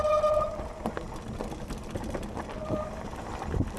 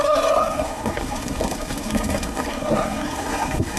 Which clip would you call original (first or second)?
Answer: first